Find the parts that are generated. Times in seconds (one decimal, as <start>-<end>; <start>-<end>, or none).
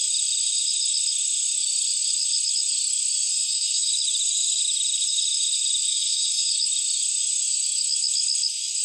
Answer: 3.3-3.9; 5.9-6.5